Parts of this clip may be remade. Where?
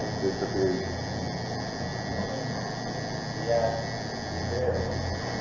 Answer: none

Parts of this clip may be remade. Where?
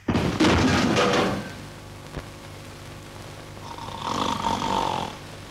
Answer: none